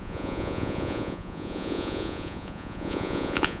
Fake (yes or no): yes